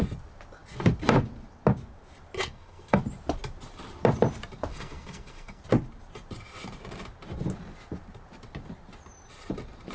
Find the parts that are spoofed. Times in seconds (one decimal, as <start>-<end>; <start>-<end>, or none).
2.4-3.0; 4.7-5.6